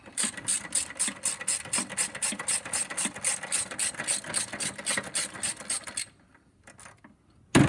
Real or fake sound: real